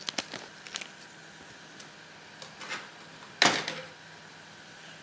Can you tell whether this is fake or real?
real